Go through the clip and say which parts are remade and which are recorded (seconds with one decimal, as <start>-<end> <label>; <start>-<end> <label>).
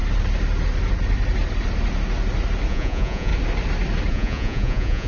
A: 0.0-2.7 recorded; 2.7-3.3 remade; 3.3-4.1 recorded; 4.1-5.1 remade